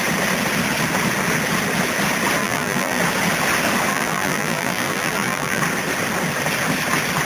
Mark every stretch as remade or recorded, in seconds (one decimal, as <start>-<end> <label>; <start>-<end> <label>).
0.0-2.4 recorded; 2.4-3.0 remade; 3.0-3.9 recorded; 3.9-5.6 remade; 5.6-7.3 recorded

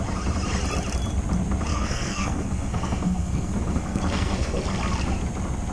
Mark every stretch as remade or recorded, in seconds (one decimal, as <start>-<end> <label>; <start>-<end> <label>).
0.0-1.7 recorded; 1.7-4.6 remade; 4.6-5.7 recorded

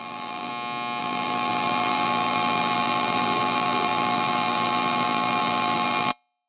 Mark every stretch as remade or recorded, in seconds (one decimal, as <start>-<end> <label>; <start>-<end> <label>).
0.0-0.5 remade; 0.5-1.0 recorded; 1.0-6.5 remade